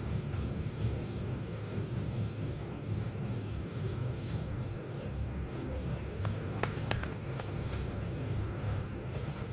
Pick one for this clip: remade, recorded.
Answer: remade